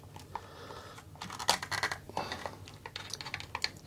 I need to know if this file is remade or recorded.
recorded